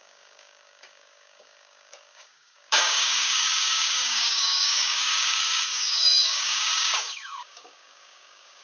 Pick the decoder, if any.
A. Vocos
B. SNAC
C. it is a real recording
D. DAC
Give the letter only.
D